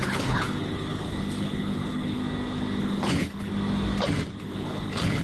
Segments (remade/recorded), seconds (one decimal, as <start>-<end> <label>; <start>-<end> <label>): 0.0-2.2 remade; 2.2-2.8 recorded; 2.8-3.5 remade; 3.5-4.4 recorded; 4.4-5.2 remade